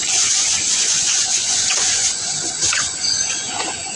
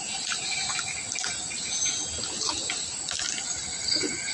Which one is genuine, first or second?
second